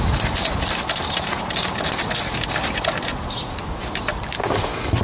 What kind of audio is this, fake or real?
real